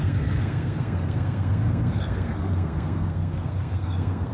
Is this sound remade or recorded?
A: remade